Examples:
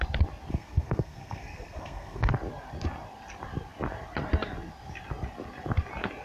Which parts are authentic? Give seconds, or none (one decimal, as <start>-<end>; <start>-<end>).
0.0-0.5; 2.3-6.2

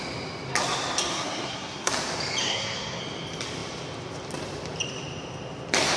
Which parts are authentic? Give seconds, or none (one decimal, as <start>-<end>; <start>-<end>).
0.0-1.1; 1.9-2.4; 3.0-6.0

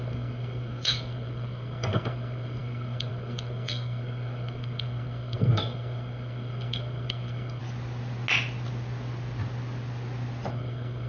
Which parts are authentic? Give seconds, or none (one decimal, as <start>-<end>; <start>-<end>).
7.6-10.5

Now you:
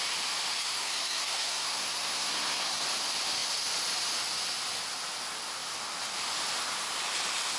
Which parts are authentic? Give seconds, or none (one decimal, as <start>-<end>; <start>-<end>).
0.0-0.6; 2.8-7.6